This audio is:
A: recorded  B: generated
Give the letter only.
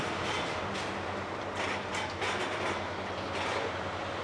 A